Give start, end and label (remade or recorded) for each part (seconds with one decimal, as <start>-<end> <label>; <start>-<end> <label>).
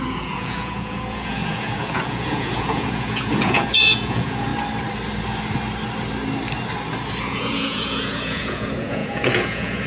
0.0-4.5 remade; 4.5-7.2 recorded; 7.2-9.9 remade